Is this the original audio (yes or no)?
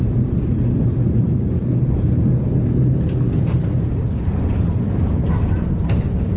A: no